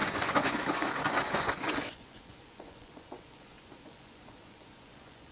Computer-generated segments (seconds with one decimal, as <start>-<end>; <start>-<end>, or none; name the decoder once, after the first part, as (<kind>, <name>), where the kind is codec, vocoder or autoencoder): 0.0-5.3 (vocoder, Vocos)